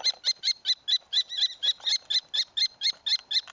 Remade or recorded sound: recorded